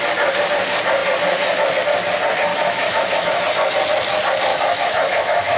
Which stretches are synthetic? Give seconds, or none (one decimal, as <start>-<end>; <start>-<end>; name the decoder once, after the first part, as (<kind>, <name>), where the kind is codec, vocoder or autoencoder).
2.5-3.4 (autoencoder, DAC-VAE); 4.5-5.6